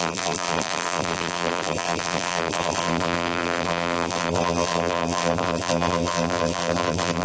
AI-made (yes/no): yes